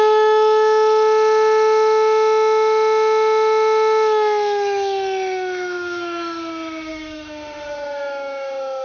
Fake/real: fake